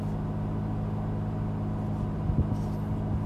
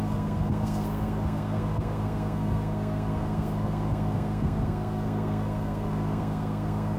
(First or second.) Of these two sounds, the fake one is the second